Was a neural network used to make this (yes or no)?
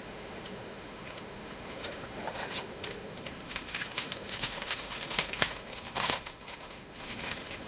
yes